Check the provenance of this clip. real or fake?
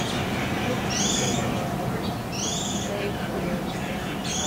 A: real